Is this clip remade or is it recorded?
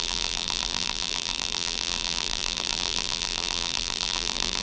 remade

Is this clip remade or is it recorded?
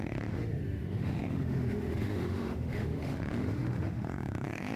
remade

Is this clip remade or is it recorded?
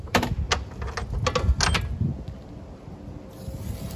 recorded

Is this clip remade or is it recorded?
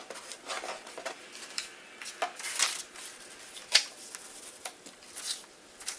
recorded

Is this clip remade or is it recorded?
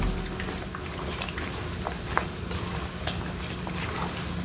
recorded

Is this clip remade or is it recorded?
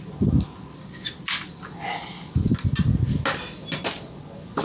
recorded